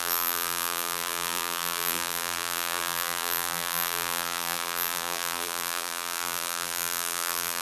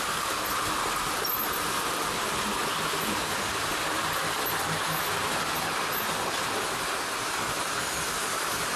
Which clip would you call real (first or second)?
second